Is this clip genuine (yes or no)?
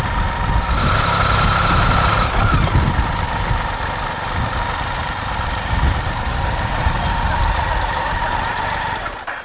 yes